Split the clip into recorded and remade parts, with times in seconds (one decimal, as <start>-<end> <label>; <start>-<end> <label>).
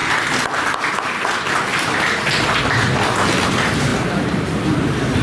0.0-1.7 recorded; 1.7-2.6 remade; 2.6-3.9 recorded; 3.9-4.7 remade; 4.7-5.2 recorded